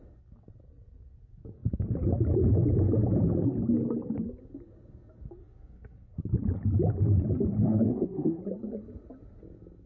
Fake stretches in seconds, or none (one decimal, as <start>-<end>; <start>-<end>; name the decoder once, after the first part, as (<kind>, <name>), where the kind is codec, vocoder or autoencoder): 5.4-6.2 (codec, SNAC); 7.6-8.4